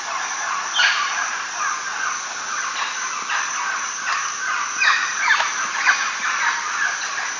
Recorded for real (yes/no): yes